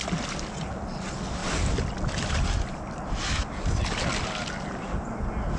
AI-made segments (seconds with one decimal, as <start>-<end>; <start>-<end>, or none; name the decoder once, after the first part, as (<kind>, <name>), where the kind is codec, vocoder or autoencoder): none